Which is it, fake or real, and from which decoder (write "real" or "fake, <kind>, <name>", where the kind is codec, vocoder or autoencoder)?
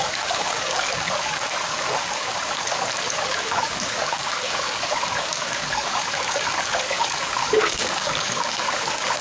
fake, codec, DAC